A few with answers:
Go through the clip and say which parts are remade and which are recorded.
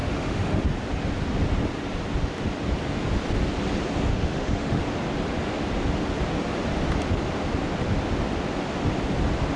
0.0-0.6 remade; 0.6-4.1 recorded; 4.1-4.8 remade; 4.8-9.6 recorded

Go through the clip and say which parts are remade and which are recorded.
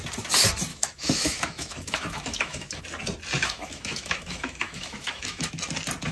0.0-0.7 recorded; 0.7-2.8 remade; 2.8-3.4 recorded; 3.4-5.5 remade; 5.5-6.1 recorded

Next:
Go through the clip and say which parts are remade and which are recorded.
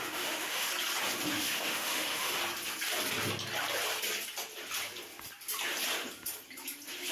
0.0-0.7 remade; 0.7-1.3 recorded; 1.3-2.4 remade; 2.4-7.1 recorded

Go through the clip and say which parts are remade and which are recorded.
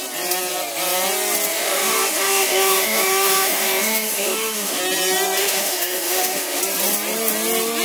0.0-1.5 recorded; 1.5-4.8 remade; 4.8-5.4 recorded; 5.4-6.6 remade; 6.6-7.8 recorded